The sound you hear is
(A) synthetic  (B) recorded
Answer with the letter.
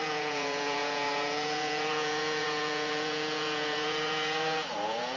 A